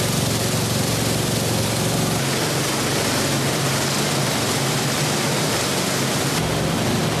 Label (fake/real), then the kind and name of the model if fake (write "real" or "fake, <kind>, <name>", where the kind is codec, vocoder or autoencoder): real